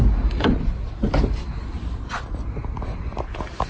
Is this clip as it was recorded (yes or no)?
yes